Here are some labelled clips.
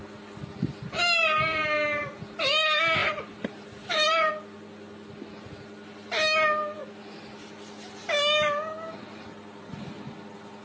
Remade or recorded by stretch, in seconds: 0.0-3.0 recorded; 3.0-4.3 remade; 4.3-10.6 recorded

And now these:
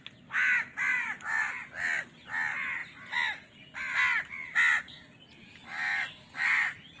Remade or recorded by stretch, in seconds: 0.0-0.9 recorded; 0.9-1.7 remade; 1.7-7.0 recorded

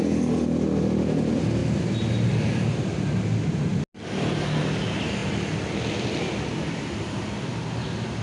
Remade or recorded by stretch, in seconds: 0.0-5.2 recorded; 5.2-7.2 remade; 7.2-8.2 recorded

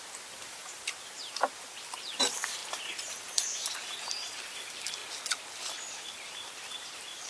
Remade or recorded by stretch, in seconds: 0.0-5.0 remade; 5.0-6.3 recorded; 6.3-7.3 remade

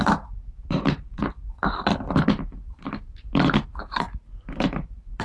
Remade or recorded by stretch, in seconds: 0.0-1.2 remade; 1.2-3.6 recorded; 3.6-5.2 remade

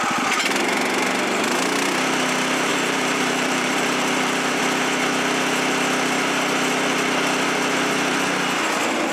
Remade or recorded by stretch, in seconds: 0.0-2.7 recorded; 2.7-4.6 remade; 4.6-9.1 recorded

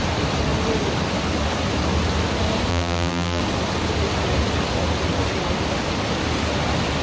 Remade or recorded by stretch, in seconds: 0.0-2.7 recorded; 2.7-3.4 remade; 3.4-7.0 recorded